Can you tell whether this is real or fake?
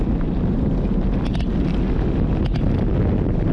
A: real